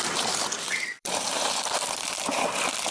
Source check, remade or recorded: remade